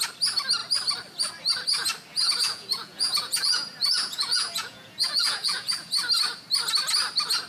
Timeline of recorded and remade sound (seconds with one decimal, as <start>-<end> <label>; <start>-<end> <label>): 0.0-2.1 recorded; 2.1-5.9 remade; 5.9-7.5 recorded